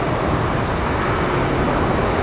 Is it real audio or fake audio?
real